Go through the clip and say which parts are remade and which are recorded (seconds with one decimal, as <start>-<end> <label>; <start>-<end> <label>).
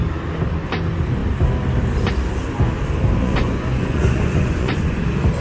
0.0-3.2 recorded; 3.2-5.0 remade; 5.0-5.4 recorded